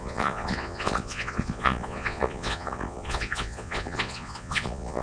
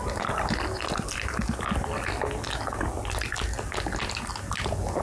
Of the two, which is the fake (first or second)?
first